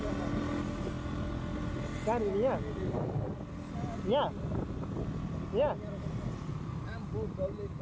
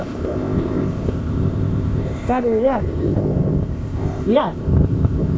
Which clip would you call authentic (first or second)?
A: first